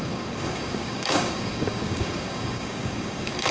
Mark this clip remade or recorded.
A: remade